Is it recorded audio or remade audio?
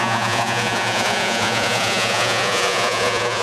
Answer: remade